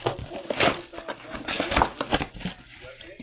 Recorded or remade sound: recorded